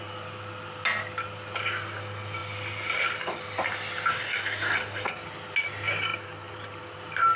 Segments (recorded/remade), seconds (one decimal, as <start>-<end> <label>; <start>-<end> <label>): 0.0-4.1 recorded; 4.1-5.1 remade; 5.1-7.4 recorded